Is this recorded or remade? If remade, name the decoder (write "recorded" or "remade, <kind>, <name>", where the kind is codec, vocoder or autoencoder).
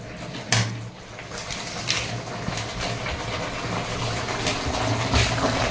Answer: recorded